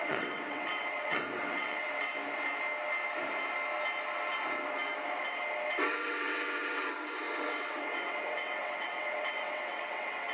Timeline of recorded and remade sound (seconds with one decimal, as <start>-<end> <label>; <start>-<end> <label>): 0.0-2.1 remade; 2.1-5.7 recorded; 5.7-10.3 remade